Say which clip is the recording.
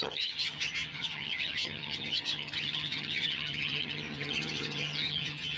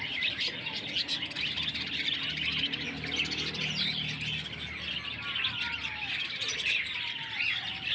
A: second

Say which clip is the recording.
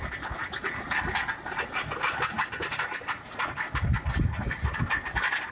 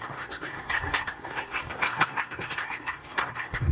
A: first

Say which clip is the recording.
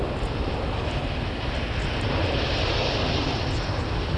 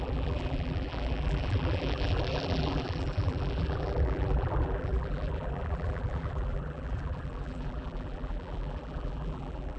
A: first